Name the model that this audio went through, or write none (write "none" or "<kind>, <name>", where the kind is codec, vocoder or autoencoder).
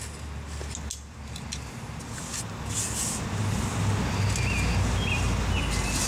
none